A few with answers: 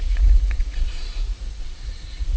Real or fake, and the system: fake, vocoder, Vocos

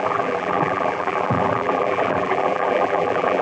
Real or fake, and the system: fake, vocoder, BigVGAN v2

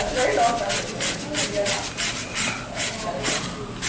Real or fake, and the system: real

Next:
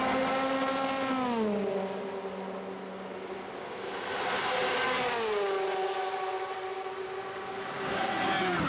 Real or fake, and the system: real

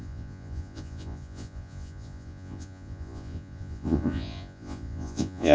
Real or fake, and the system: fake, vocoder, Vocos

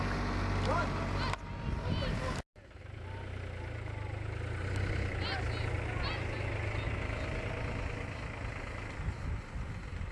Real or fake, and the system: real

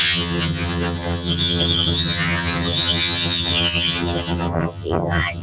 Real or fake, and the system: fake, vocoder, HiFi-GAN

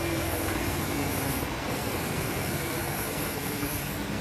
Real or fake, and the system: fake, codec, SNAC